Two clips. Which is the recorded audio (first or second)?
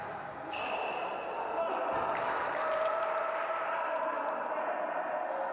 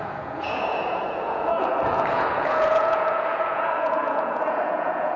first